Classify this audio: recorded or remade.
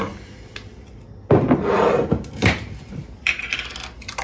recorded